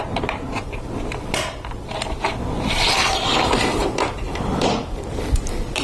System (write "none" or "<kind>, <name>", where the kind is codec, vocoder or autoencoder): vocoder, BigVGAN v2